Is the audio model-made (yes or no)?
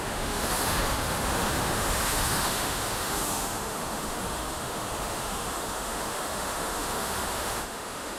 yes